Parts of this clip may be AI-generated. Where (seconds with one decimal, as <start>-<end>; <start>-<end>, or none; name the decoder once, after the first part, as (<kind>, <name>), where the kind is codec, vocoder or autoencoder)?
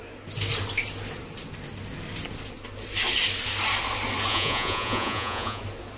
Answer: 4.3-5.6 (vocoder, Vocos)